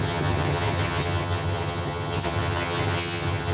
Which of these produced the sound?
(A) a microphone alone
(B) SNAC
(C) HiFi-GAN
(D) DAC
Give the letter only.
C